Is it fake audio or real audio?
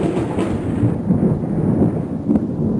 fake